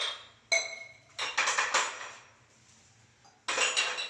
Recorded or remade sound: recorded